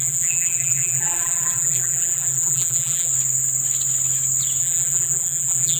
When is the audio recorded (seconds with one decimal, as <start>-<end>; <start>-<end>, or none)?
3.1-4.6